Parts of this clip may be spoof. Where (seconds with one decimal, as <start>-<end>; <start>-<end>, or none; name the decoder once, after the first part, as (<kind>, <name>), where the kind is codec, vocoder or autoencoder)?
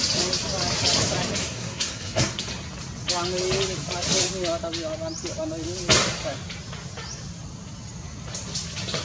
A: 1.4-2.4 (codec, SNAC)